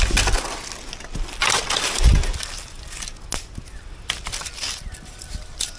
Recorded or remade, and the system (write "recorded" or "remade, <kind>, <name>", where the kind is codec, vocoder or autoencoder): recorded